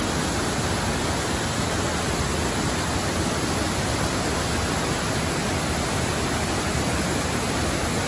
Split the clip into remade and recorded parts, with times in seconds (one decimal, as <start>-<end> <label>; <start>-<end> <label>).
0.0-8.1 recorded